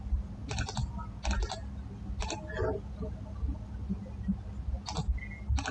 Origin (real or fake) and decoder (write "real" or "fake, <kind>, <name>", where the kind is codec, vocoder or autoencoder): real